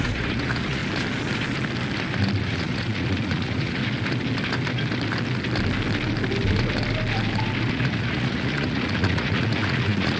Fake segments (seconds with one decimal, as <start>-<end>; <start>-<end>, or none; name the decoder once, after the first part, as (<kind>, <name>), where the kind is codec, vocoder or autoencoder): 0.0-0.8 (vocoder, Vocos); 2.4-3.8; 7.7-10.2